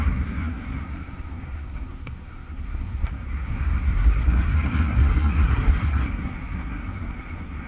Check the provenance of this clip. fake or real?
fake